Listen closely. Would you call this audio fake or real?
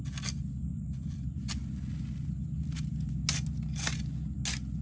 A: real